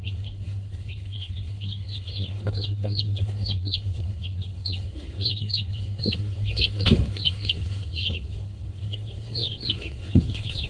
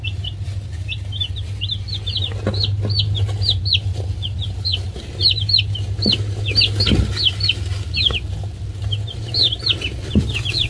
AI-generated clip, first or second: first